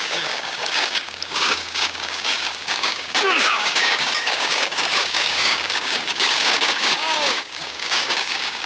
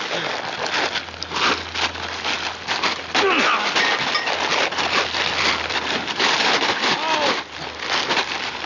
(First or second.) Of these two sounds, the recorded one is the second